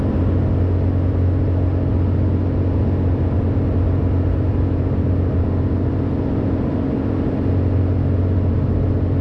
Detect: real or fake real